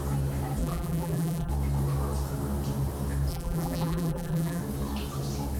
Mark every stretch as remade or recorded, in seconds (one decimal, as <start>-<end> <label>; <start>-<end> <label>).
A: 0.0-0.6 recorded; 0.6-1.5 remade; 1.5-3.3 recorded; 3.3-4.6 remade; 4.6-5.6 recorded